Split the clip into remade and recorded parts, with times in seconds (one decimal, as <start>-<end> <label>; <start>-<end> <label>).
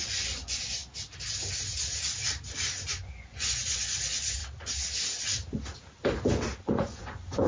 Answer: 0.0-0.8 remade; 0.8-2.9 recorded; 2.9-4.4 remade; 4.4-6.6 recorded; 6.6-7.5 remade